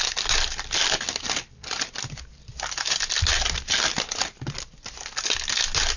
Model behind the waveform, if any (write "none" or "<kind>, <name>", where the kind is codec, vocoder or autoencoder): none